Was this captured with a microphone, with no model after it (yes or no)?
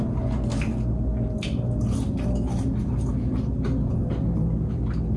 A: yes